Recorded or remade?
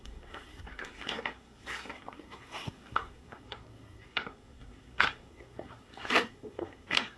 remade